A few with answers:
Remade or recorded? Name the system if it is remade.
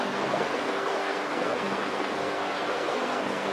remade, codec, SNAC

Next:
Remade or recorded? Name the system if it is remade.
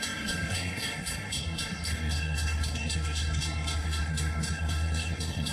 remade, codec, SNAC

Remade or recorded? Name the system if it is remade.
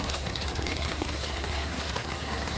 remade, codec, SNAC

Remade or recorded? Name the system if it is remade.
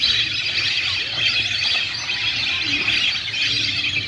recorded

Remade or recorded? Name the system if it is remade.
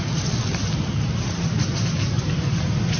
recorded